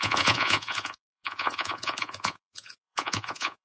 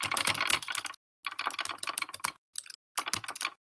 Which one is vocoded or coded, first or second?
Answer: first